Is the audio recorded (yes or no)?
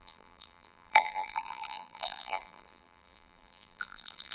no